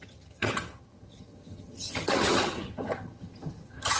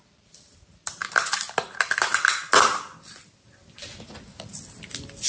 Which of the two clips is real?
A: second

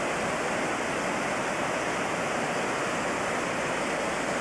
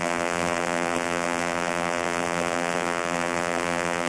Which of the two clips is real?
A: first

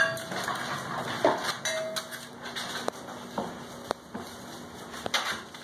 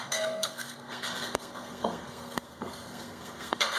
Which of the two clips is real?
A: first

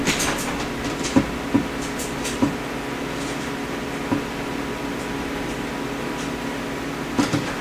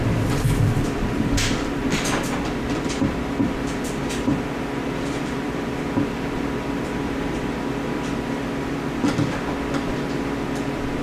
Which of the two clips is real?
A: first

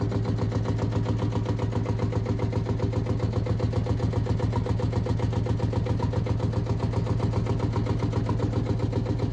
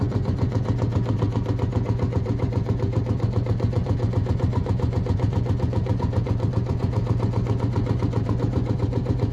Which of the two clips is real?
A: first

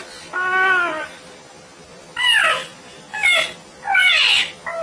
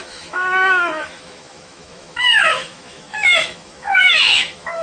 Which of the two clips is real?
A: first